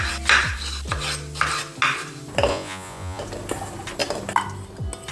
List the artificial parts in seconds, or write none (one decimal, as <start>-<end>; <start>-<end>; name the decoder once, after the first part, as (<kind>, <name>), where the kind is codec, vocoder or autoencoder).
2.5-3.2 (vocoder, Vocos)

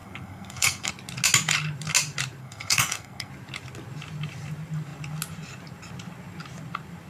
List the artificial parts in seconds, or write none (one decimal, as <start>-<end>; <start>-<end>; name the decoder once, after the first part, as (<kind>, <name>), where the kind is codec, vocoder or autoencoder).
0.0-0.9 (codec, SNAC); 2.4-3.3